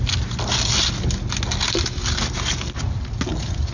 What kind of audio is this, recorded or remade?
recorded